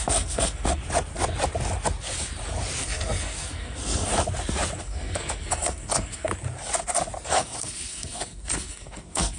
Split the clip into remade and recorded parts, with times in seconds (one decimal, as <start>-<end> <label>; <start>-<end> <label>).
0.0-0.8 remade; 0.8-2.8 recorded; 2.8-4.1 remade; 4.1-4.8 recorded; 4.8-6.3 remade; 6.3-7.3 recorded; 7.3-9.4 remade